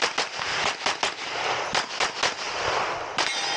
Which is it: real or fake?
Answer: real